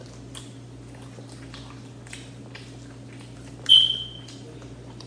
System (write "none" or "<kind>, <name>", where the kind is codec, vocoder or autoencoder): none